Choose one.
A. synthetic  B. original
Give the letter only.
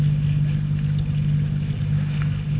B